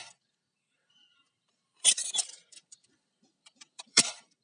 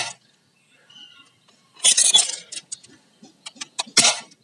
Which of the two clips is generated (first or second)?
first